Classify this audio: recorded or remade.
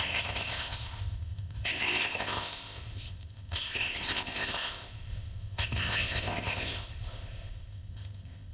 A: remade